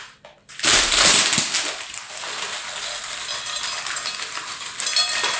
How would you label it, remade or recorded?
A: recorded